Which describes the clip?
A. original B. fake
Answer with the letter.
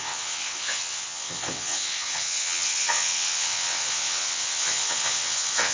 B